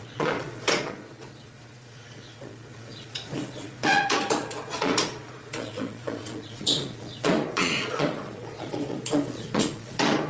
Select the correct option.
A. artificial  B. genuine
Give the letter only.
A